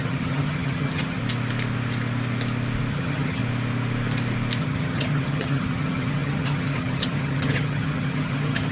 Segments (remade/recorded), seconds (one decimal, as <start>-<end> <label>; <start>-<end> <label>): 0.0-1.2 remade; 1.2-2.9 recorded; 2.9-3.4 remade; 3.4-4.6 recorded; 4.6-8.7 remade